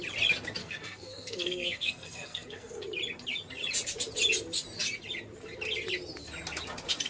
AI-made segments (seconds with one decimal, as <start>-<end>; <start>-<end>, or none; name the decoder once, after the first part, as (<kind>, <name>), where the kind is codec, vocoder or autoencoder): 0.6-2.8 (codec, SNAC)